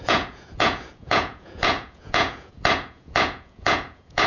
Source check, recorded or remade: remade